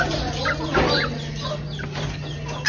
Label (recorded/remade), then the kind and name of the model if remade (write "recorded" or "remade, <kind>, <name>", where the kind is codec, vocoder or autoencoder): recorded